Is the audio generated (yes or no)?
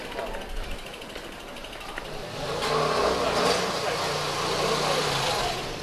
no